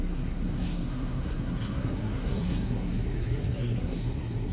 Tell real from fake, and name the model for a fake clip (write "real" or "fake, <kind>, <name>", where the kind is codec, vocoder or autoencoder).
fake, codec, SNAC